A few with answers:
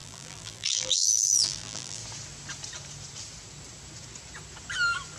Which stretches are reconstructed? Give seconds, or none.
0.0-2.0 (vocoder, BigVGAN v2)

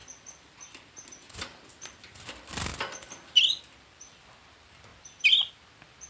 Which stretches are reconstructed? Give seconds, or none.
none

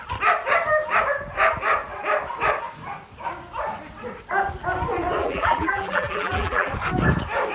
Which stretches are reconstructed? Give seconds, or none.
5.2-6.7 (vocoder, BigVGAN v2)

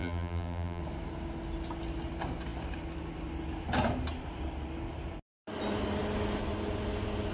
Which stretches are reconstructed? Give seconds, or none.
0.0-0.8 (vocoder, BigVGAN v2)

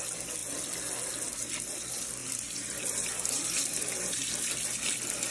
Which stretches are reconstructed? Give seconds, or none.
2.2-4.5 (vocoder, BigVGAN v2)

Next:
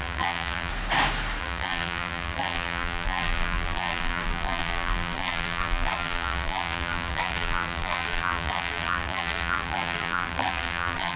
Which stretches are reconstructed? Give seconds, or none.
0.0-0.7 (vocoder, BigVGAN v2); 1.4-11.2